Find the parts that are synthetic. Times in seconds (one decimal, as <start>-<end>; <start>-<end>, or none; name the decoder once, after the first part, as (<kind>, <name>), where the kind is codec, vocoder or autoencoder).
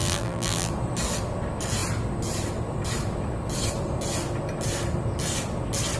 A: 0.0-0.7 (vocoder, BigVGAN v2)